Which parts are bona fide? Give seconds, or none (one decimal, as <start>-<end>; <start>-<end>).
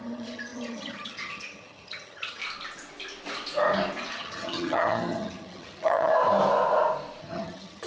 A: 2.4-4.1; 6.1-7.2